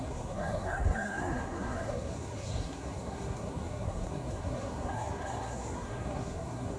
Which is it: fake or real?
fake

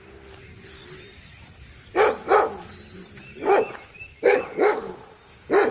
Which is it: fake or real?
real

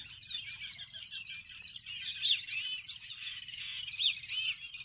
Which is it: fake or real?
real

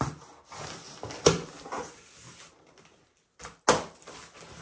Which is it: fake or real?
real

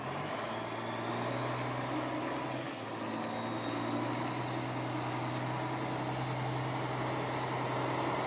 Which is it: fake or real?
real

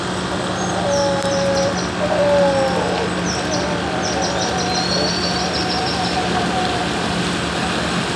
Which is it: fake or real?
real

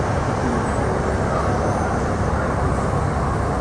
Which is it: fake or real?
real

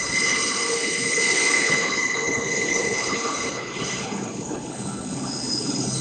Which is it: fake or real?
fake